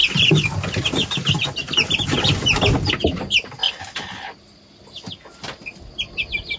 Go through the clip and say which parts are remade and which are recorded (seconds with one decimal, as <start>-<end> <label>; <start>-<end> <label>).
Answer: 0.0-6.6 recorded